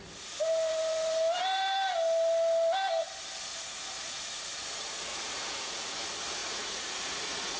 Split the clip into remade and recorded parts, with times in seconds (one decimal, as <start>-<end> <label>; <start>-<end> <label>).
0.0-3.5 recorded; 3.5-4.2 remade; 4.2-5.1 recorded; 5.1-6.0 remade; 6.0-6.4 recorded; 6.4-7.6 remade